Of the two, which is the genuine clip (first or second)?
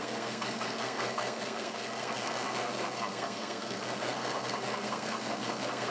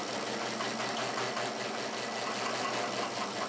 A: second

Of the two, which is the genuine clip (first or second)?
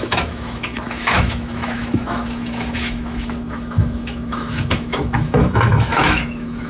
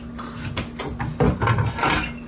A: second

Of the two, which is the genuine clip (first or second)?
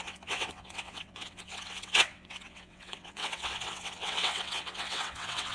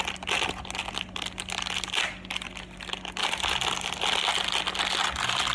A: second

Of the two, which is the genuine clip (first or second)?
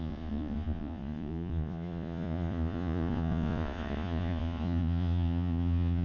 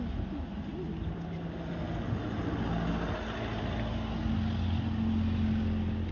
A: second